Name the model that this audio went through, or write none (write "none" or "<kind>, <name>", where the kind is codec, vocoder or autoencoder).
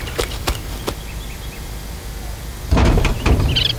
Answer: vocoder, BigVGAN v2